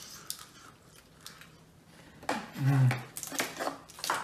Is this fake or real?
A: real